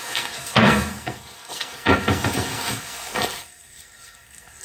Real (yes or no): no